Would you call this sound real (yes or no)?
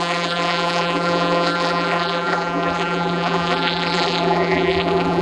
no